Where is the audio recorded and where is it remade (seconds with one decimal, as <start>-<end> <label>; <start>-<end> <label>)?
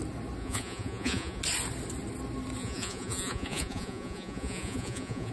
0.0-0.4 recorded; 0.4-1.4 remade; 1.4-2.6 recorded; 2.6-5.3 remade